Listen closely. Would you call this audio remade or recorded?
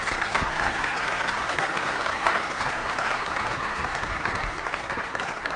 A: remade